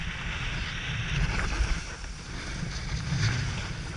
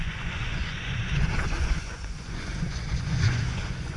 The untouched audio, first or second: first